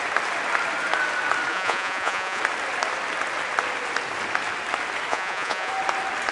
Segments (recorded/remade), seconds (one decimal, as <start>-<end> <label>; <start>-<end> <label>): 0.0-1.5 recorded; 1.5-2.4 remade; 2.4-5.1 recorded; 5.1-5.7 remade; 5.7-6.3 recorded